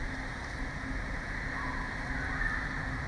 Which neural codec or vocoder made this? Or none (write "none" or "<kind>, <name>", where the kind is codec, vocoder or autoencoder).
none